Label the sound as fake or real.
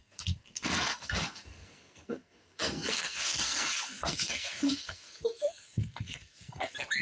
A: fake